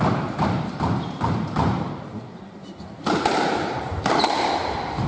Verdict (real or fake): fake